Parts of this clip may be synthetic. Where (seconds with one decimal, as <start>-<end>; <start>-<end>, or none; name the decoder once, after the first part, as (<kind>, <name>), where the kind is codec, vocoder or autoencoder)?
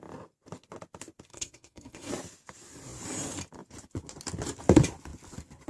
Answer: 1.3-2.1 (codec, SNAC)